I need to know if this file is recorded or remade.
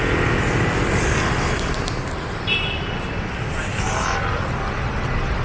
recorded